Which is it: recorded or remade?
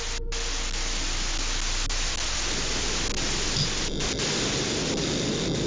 recorded